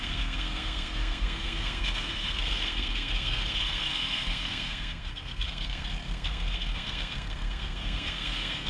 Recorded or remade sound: remade